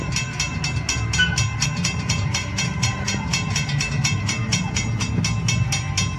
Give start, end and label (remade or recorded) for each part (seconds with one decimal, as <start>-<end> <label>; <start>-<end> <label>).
0.0-1.6 recorded; 1.6-5.1 remade; 5.1-6.2 recorded